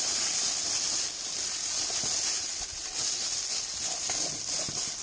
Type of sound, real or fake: real